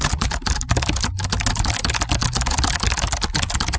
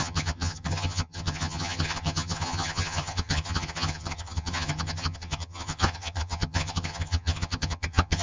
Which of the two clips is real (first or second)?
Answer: first